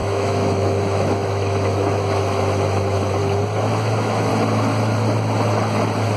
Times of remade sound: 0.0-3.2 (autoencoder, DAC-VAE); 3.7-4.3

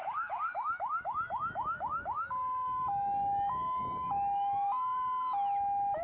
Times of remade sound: none

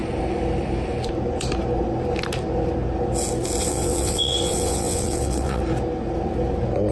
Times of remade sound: 3.6-5.6 (vocoder, WaveNeXt)

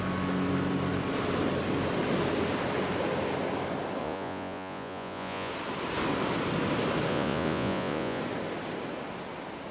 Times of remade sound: 4.0-5.5 (vocoder, Vocos); 7.1-8.2

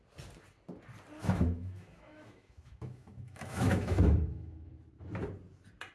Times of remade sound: 1.2-4.7 (autoencoder, DAC-VAE)

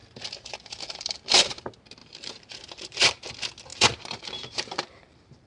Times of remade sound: 0.0-1.6 (vocoder, BigVGAN v2); 2.0-3.3; 3.7-5.5

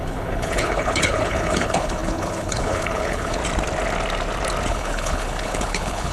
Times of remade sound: 0.0-3.4 (codec, HILCodec); 4.7-6.1